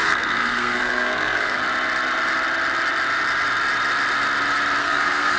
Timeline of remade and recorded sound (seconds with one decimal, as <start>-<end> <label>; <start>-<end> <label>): 0.0-1.6 remade; 1.6-4.8 recorded; 4.8-5.4 remade